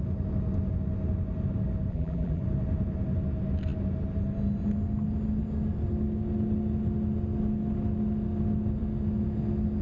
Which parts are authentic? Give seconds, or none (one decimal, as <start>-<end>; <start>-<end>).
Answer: 0.0-1.9; 2.4-9.8